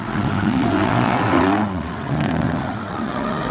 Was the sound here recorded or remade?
remade